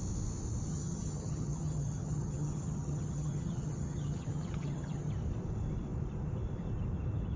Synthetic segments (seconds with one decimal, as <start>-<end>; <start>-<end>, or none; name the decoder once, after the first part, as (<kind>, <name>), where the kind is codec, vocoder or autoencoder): 0.7-5.1 (vocoder, HiFi-GAN)